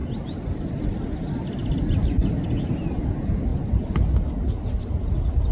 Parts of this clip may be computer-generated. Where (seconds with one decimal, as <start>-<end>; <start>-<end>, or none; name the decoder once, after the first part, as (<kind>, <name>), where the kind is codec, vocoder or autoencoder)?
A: 0.0-1.0 (vocoder, BigVGAN v2); 1.6-2.8

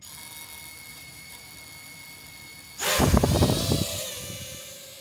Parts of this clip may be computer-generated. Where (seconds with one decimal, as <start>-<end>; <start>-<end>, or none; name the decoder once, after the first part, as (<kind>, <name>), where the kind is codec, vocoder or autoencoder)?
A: 0.9-1.5 (vocoder, BigVGAN v2)

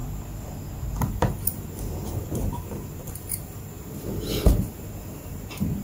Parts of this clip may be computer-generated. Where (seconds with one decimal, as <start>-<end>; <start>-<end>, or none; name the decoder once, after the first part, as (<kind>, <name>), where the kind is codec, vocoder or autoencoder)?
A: 1.1-5.8 (vocoder, BigVGAN v2)